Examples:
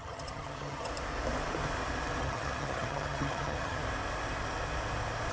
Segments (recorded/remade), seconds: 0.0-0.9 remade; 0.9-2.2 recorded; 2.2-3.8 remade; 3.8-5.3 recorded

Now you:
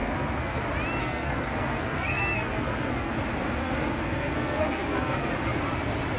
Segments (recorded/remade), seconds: 0.0-0.6 remade; 0.6-1.0 recorded; 1.0-3.1 remade; 3.1-3.6 recorded; 3.6-5.3 remade; 5.3-6.2 recorded

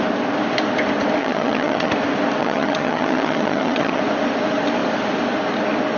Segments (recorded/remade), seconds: 0.0-1.2 recorded; 1.2-1.9 remade; 1.9-2.4 recorded; 2.4-4.0 remade; 4.0-6.0 recorded

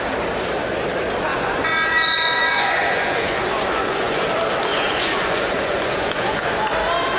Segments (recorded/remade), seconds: 0.0-1.3 recorded; 1.3-4.3 remade; 4.3-4.7 recorded; 4.7-6.7 remade; 6.7-7.2 recorded

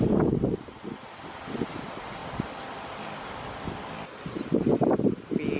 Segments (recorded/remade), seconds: 0.0-5.6 recorded

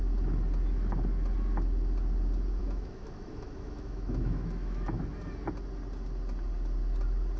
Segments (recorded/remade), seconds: 0.0-2.6 recorded; 2.6-5.0 remade; 5.0-7.4 recorded